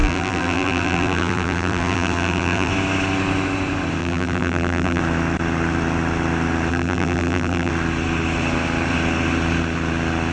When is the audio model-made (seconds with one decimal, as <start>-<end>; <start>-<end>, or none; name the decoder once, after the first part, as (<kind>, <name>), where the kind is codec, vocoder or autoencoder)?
0.0-2.7 (vocoder, BigVGAN v2); 4.0-5.0; 6.7-7.7